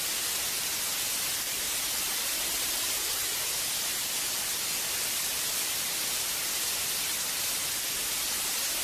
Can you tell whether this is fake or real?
real